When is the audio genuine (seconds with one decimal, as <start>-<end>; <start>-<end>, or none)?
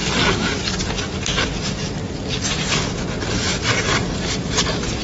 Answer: 2.0-4.3